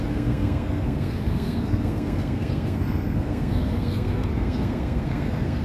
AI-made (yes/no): yes